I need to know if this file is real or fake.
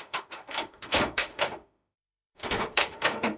fake